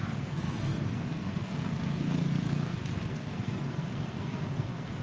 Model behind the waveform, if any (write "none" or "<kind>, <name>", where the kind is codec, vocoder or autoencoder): codec, SNAC